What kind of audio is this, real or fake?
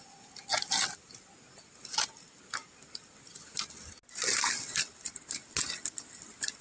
real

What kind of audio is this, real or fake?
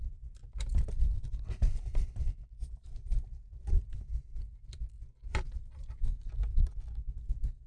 fake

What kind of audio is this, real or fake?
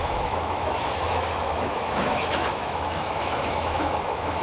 fake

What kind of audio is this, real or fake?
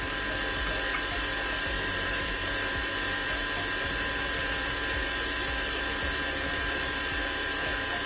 real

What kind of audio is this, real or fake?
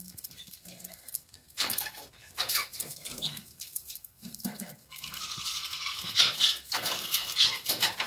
fake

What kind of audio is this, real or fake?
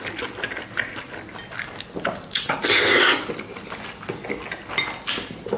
real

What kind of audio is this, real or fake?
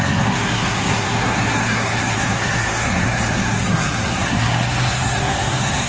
fake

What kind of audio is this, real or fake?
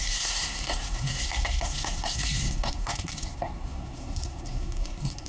fake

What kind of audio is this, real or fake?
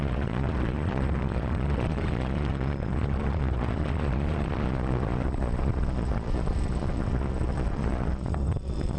fake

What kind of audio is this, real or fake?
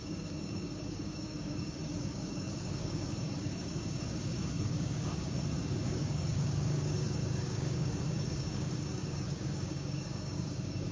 fake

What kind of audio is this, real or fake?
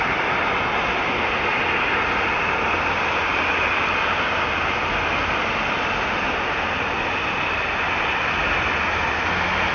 real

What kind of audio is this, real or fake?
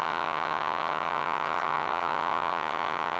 fake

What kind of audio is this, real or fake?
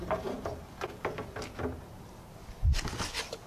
real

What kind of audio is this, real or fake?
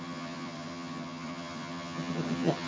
fake